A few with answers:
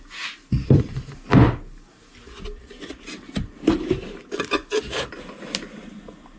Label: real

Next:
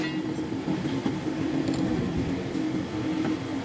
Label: real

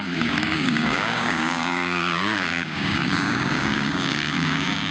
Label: fake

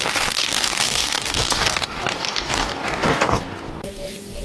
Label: fake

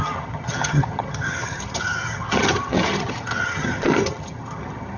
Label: fake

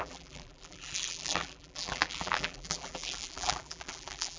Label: fake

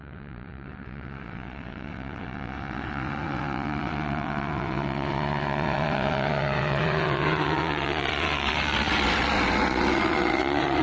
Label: fake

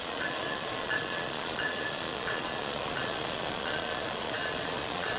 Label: fake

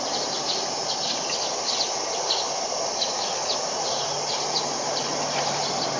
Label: real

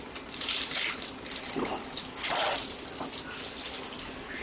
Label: real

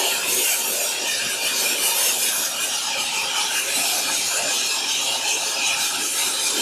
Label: fake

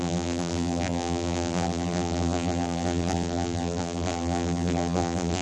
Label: fake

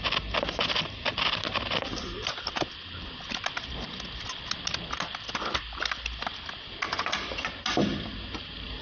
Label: real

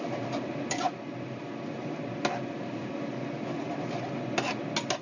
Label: real